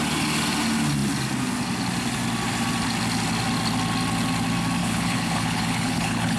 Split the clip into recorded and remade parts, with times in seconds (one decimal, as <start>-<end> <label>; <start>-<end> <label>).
0.0-4.8 recorded; 4.8-6.4 remade